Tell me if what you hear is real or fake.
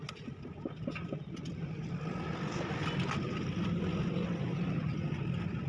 real